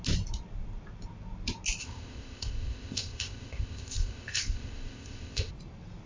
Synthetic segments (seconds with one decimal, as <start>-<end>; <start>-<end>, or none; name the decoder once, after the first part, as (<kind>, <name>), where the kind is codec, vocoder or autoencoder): 1.8-5.5 (codec, ZipCodec)